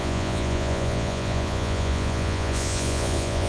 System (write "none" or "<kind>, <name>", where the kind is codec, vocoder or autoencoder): vocoder, Vocos